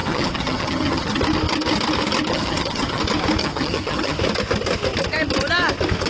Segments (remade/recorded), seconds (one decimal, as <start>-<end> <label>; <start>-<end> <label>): 0.0-1.2 remade; 1.2-2.3 recorded; 2.3-3.0 remade; 3.0-3.4 recorded; 3.4-4.2 remade; 4.2-6.1 recorded